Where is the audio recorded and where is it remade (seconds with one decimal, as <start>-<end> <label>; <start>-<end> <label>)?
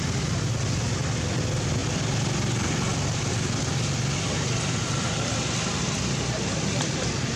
0.0-7.4 recorded